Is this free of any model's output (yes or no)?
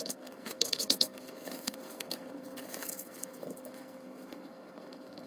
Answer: no